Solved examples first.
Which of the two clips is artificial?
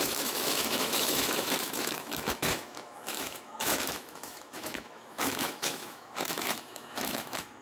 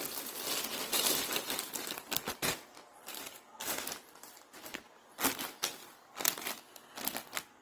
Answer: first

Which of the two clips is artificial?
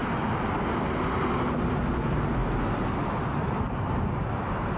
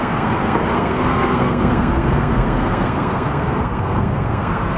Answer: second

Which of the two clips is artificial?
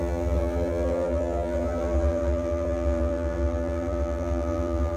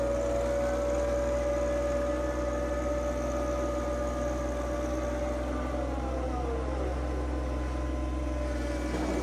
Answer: first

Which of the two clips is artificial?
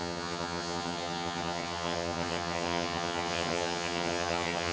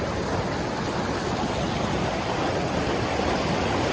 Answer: first